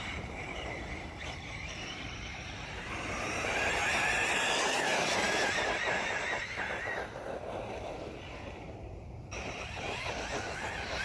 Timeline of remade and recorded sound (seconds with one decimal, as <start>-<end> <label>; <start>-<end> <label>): 0.0-9.0 remade; 9.0-11.0 recorded